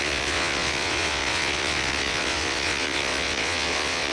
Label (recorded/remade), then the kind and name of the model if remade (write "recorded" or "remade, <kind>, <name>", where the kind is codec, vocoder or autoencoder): remade, vocoder, WaveNeXt